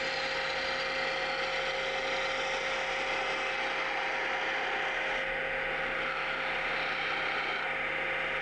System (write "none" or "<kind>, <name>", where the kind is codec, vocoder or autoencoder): none